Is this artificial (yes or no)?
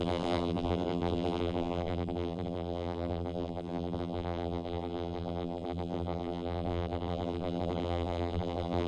yes